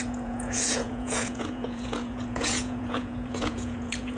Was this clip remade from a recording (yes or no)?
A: yes